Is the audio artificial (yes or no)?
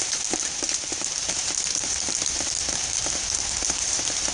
yes